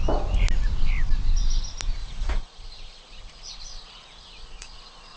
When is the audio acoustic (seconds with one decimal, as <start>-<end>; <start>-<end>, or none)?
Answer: 0.0-2.0